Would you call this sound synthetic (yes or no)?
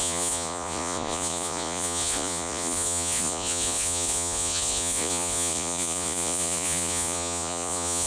yes